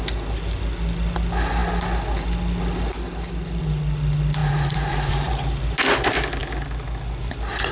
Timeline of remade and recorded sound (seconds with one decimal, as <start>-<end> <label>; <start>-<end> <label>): 0.0-4.4 recorded; 4.4-5.3 remade; 5.3-7.7 recorded